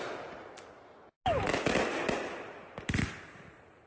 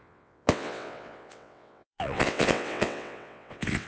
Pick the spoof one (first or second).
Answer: second